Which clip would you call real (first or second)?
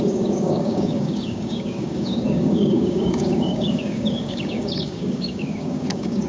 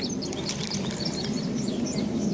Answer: second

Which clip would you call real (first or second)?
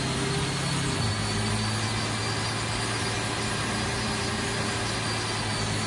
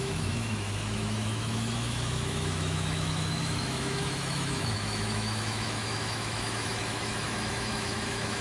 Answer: first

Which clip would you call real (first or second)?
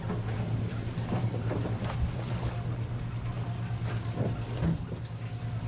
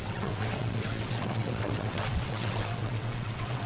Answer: first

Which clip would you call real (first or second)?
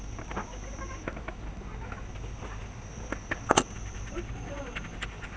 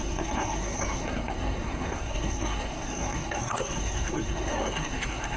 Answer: first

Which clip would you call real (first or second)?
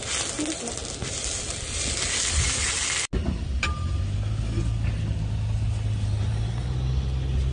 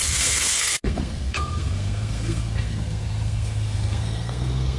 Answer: first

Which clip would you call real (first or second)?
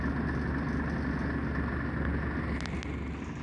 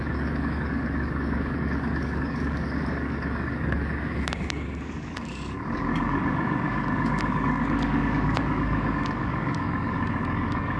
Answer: first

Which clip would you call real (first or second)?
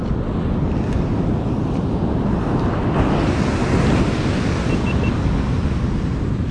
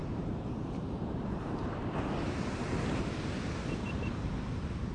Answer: first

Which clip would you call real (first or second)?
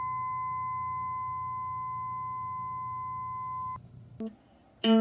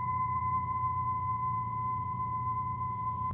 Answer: first